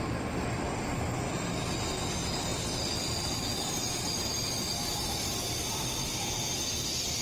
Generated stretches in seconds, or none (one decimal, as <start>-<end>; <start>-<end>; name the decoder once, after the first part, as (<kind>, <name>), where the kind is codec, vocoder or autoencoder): 2.5-3.1 (vocoder, BigVGAN v2)